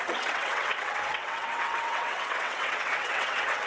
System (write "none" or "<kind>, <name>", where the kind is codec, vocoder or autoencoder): vocoder, WaveNeXt